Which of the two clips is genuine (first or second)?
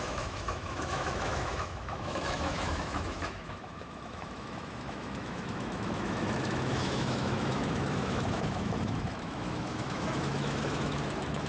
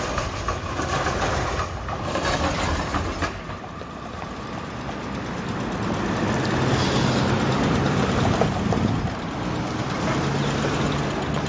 second